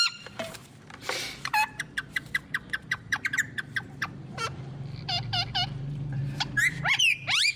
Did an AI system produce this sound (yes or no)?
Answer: yes